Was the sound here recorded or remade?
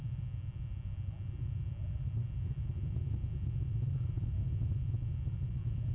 recorded